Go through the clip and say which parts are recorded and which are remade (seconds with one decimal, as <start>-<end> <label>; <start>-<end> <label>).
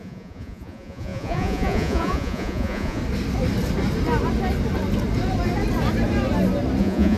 0.0-3.0 remade; 3.0-6.8 recorded; 6.8-7.2 remade